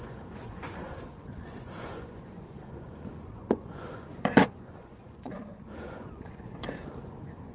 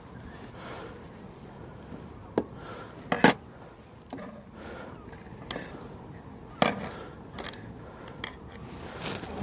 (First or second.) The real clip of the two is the second